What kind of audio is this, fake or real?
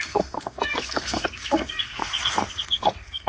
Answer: fake